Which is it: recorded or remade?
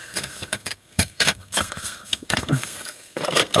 remade